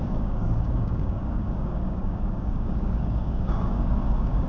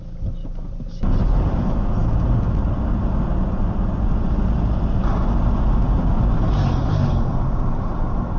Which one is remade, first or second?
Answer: first